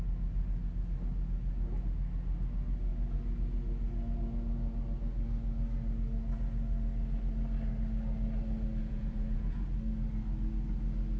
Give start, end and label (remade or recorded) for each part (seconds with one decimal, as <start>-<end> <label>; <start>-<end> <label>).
0.0-8.8 recorded; 8.8-9.7 remade; 9.7-11.2 recorded